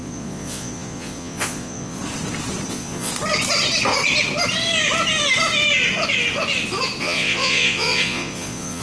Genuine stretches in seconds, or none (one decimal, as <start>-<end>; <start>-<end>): 2.0-2.7; 3.1-7.0